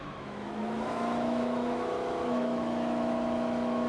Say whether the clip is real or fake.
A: fake